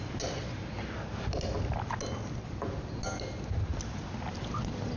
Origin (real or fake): real